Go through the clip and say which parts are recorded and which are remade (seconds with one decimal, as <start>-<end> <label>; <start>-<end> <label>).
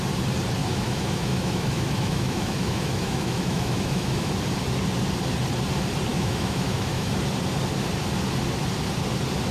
0.0-0.6 recorded; 0.6-4.3 remade; 4.3-6.1 recorded; 6.1-7.1 remade; 7.1-9.5 recorded